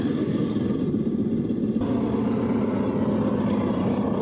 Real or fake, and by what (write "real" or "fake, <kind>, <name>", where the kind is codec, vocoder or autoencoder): real